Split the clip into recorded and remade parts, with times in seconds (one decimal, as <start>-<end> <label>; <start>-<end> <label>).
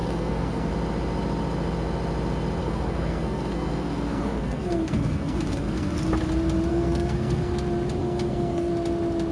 0.0-0.7 remade; 0.7-2.6 recorded; 2.6-5.9 remade; 5.9-6.7 recorded; 6.7-7.5 remade; 7.5-8.0 recorded; 8.0-8.7 remade; 8.7-9.3 recorded